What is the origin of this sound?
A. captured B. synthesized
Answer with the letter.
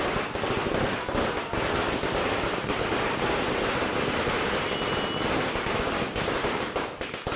A